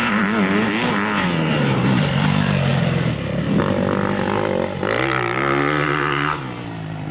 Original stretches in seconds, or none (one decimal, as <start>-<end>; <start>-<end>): 0.0-7.1